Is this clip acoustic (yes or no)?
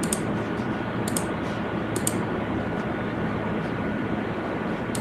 yes